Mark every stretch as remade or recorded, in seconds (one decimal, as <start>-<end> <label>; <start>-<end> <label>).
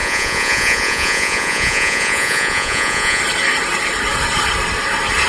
0.0-3.2 remade; 3.2-5.3 recorded